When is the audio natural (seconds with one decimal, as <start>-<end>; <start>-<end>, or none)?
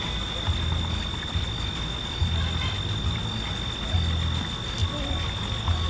0.0-5.9